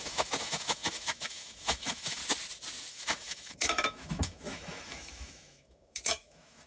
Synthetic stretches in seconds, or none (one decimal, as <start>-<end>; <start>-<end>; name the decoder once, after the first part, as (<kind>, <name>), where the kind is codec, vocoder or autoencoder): 0.0-2.2 (autoencoder, DAC-VAE); 2.9-6.7

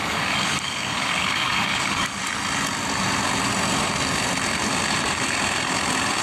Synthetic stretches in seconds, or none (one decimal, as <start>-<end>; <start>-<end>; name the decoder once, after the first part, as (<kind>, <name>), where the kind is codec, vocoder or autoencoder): 0.0-2.2 (codec, DAC)

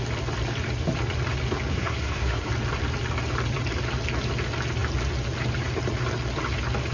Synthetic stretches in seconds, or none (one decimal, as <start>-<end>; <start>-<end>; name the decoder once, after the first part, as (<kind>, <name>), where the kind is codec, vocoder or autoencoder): 1.7-2.5 (codec, SNAC)

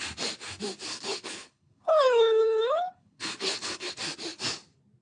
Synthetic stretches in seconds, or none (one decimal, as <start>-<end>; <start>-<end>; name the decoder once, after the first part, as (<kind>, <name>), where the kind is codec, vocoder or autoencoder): 0.9-3.9 (codec, HILCodec)

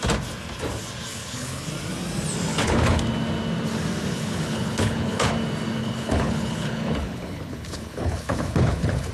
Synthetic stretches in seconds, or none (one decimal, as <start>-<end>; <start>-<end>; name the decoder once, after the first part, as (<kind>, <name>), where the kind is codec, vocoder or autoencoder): 1.1-1.7 (codec, HILCodec); 2.5-3.0; 4.1-5.3; 5.8-9.1

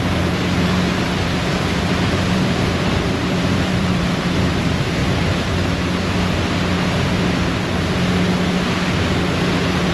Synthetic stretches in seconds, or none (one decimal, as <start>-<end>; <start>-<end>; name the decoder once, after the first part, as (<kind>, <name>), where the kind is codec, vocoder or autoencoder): 0.0-5.0 (vocoder, BigVGAN v2)

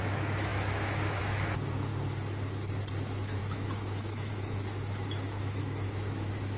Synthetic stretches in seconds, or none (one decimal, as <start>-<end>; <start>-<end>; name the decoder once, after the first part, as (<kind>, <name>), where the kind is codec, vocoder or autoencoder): 0.0-1.9 (autoencoder, DAC-VAE); 2.9-6.6

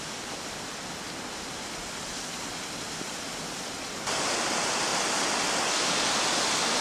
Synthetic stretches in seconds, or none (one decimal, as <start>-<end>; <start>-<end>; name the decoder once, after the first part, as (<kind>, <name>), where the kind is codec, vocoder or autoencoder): none